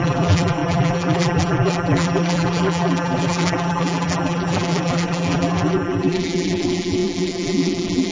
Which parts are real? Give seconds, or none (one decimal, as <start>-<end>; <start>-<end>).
none